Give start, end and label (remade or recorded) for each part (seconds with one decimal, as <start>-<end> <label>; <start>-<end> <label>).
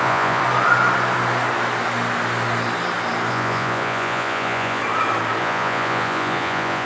0.0-0.4 remade; 0.4-3.3 recorded; 3.3-4.8 remade; 4.8-5.4 recorded; 5.4-6.9 remade